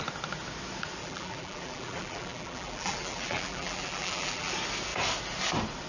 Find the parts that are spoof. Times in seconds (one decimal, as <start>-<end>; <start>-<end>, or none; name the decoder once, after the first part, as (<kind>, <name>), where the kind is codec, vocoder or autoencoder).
1.0-4.5 (vocoder, BigVGAN v2)